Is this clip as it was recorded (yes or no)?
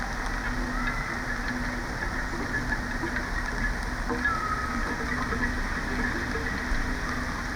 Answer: yes